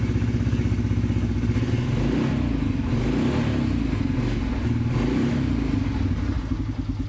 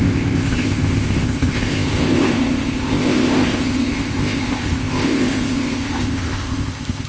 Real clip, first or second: first